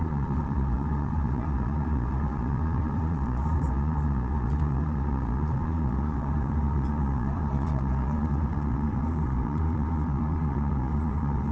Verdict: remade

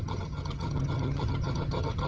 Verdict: remade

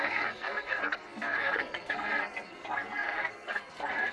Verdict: remade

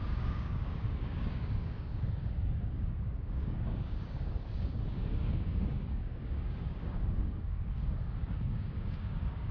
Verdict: remade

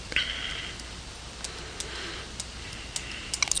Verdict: recorded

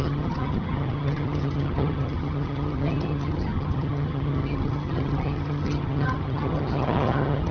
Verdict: remade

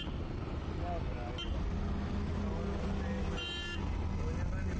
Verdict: recorded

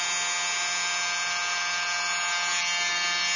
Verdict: recorded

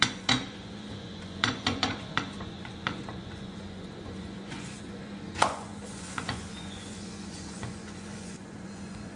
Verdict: remade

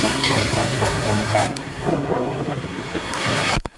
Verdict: remade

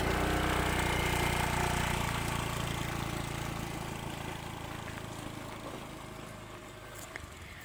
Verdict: recorded